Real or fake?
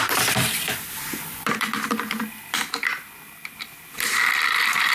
fake